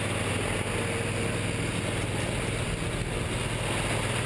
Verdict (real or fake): real